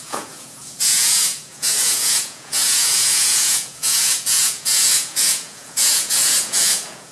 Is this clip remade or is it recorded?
remade